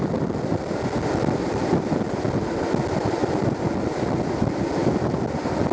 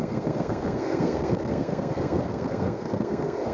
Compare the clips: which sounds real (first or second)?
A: first